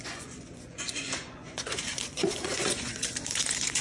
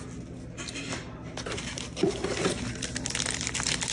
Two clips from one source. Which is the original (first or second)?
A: second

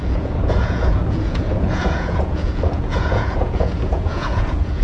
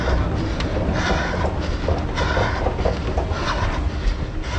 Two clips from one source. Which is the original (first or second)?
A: second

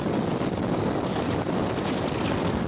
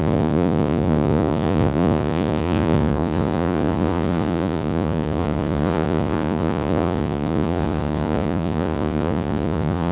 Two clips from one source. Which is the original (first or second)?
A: first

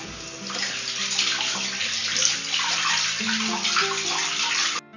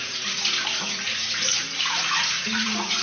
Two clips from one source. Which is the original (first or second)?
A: first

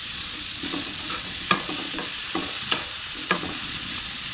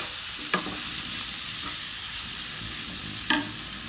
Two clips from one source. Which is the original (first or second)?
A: second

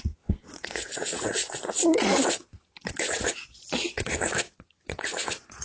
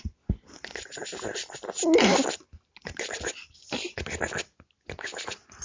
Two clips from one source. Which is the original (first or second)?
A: second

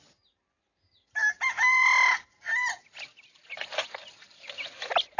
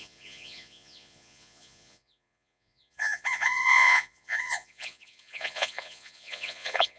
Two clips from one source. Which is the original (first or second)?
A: first